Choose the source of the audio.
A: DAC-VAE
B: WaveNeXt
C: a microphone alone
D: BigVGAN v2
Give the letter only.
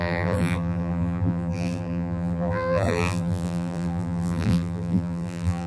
D